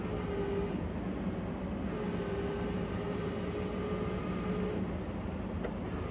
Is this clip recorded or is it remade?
recorded